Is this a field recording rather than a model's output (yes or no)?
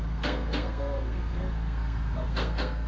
no